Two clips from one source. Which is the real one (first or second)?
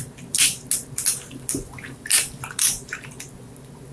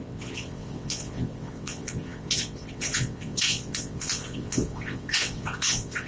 first